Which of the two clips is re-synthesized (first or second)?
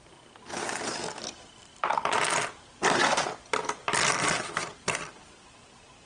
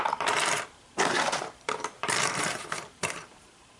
second